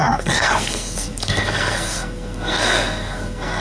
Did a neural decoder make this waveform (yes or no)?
yes